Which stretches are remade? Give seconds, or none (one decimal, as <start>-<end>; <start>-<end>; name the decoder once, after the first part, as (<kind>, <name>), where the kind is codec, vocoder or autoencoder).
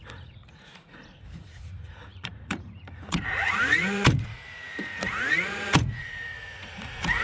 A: 0.0-7.2 (vocoder, Vocos)